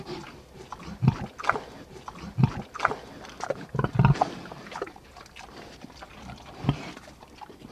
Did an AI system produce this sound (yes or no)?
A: no